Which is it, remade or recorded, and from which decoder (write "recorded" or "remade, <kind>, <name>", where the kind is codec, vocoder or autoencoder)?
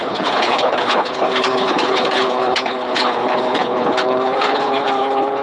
remade, codec, HILCodec